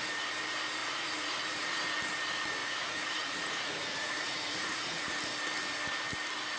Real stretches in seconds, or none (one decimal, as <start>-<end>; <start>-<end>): 0.0-0.8; 1.8-2.6; 5.2-6.6